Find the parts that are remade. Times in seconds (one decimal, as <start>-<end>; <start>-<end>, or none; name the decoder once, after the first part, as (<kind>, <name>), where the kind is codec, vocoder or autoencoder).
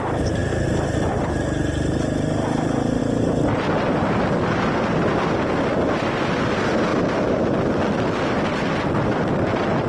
none